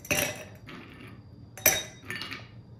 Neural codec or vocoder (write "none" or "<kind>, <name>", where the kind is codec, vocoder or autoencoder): none